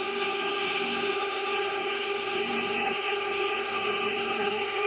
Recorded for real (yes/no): no